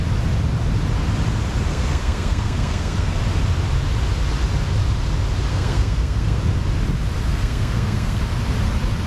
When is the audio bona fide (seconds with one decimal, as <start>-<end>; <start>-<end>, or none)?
0.0-1.7; 3.2-5.5; 6.4-7.3; 8.2-9.1